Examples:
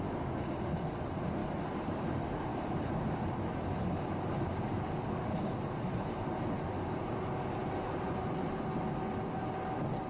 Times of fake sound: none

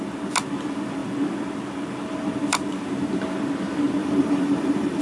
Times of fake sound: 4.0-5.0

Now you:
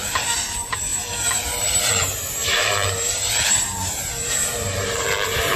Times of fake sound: 0.0-5.6